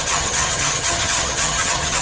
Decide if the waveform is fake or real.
fake